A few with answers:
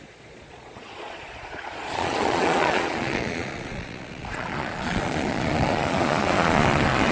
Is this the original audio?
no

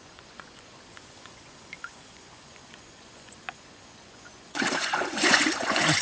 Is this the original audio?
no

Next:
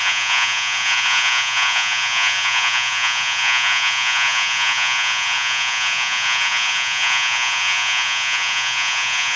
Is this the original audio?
no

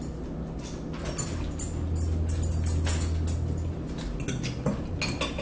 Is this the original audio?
yes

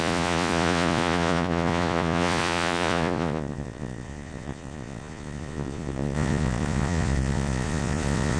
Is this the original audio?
no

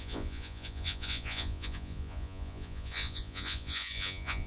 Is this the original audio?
no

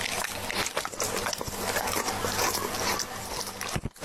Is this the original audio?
yes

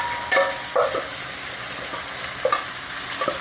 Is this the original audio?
yes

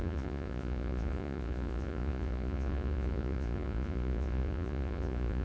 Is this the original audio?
no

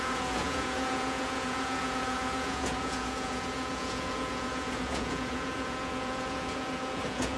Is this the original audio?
no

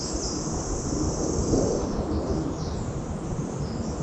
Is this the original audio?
yes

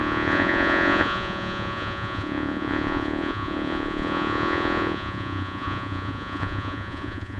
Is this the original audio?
no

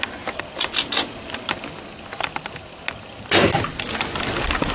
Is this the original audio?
yes